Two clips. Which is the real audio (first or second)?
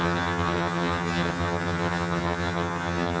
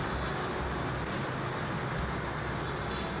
second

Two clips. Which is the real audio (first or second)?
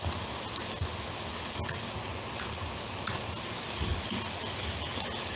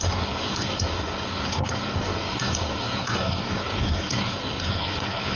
first